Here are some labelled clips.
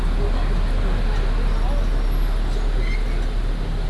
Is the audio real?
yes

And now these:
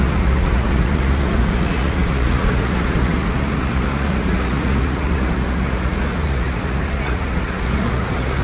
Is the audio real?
no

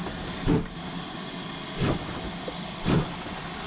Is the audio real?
yes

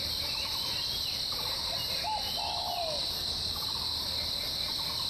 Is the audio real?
yes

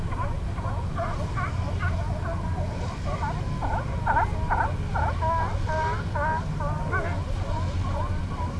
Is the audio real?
yes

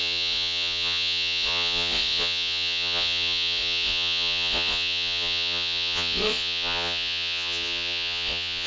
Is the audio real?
no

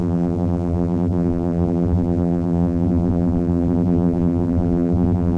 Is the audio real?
no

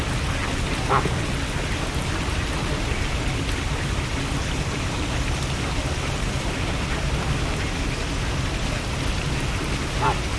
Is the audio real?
yes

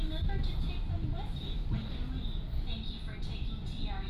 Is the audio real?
yes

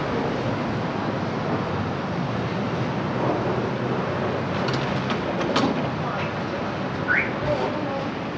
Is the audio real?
yes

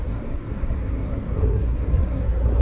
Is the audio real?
no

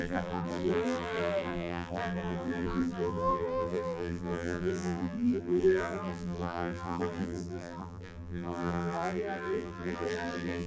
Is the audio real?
no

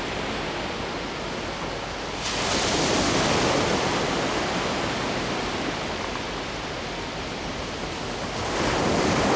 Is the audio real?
yes